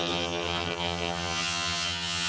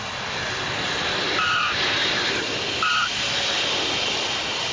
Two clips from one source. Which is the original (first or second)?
second